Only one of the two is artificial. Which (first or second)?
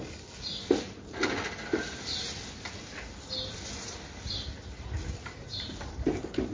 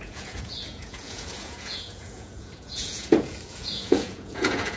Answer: second